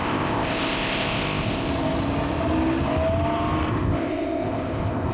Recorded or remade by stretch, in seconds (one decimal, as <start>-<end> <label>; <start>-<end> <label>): 0.0-1.7 remade; 1.7-3.7 recorded; 3.7-5.1 remade